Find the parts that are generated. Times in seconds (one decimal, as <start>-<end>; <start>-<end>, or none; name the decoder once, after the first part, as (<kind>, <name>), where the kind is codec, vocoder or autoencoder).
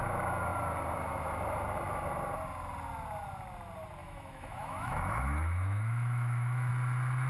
4.0-6.7 (autoencoder, DAC-VAE)